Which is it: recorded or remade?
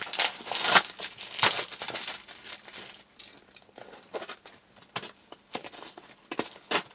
recorded